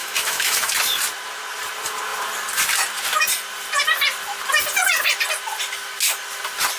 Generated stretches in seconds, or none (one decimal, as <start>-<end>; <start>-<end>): 0.0-0.7

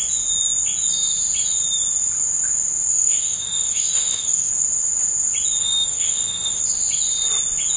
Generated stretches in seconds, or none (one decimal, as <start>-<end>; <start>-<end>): 2.9-4.5; 5.6-6.6

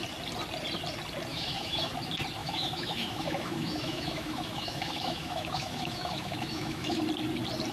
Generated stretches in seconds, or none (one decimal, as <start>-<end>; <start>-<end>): 1.3-1.9; 2.4-7.0